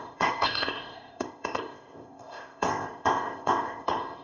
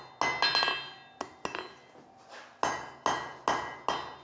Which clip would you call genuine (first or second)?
second